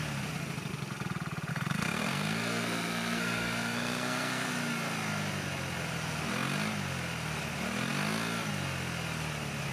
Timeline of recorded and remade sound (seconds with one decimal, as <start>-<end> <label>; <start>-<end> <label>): 0.0-1.5 recorded; 1.5-4.5 remade; 4.5-9.7 recorded